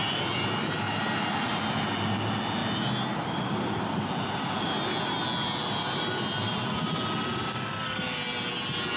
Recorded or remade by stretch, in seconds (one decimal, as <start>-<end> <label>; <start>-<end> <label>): 0.0-1.6 remade; 1.6-5.6 recorded; 5.6-6.7 remade; 6.7-7.3 recorded; 7.3-8.0 remade; 8.0-9.0 recorded